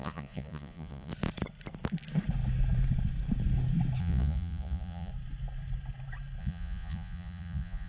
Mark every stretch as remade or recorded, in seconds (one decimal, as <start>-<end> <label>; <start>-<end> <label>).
0.0-1.1 remade; 1.1-4.0 recorded; 4.0-5.1 remade; 5.1-6.4 recorded; 6.4-7.9 remade